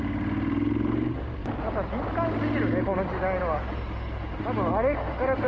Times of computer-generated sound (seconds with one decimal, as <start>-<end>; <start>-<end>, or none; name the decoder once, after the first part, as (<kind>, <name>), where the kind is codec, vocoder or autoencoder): none